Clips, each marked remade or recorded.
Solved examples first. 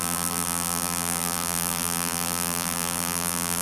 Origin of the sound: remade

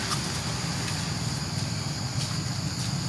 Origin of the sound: recorded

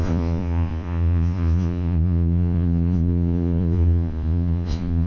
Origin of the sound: remade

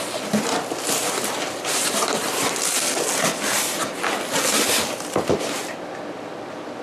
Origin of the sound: recorded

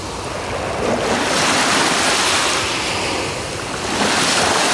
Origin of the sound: recorded